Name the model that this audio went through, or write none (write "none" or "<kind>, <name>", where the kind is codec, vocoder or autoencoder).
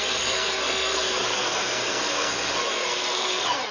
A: codec, SNAC